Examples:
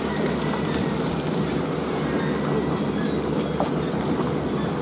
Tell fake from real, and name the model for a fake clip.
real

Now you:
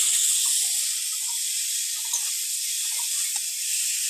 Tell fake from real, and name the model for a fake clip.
real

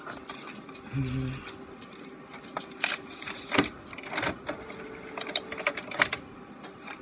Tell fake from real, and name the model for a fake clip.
real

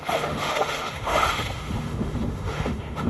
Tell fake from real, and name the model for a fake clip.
fake, autoencoder, DAC-VAE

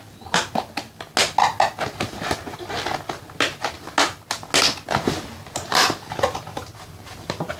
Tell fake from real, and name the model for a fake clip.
real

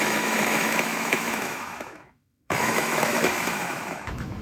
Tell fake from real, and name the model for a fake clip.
fake, autoencoder, DAC-VAE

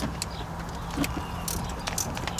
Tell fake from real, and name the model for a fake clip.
real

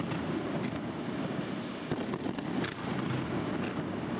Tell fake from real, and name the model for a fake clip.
real